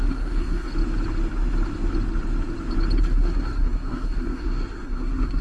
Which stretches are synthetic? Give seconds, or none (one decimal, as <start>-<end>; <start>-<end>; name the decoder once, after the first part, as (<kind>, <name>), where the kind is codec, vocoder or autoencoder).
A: 0.0-0.7 (codec, SNAC); 3.0-5.4